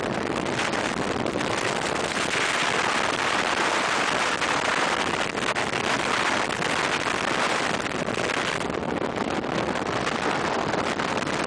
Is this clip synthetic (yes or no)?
no